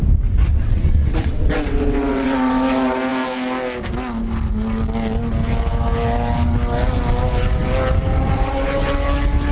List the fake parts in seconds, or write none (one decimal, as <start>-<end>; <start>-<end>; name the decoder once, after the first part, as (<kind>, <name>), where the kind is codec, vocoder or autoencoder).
0.5-2.5 (vocoder, WaveNeXt)